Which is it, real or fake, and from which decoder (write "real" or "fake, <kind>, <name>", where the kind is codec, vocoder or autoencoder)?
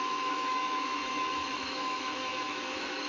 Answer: fake, autoencoder, DAC-VAE